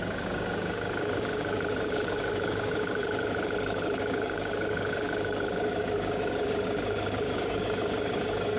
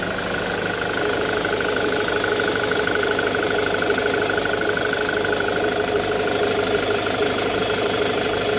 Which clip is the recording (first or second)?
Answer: second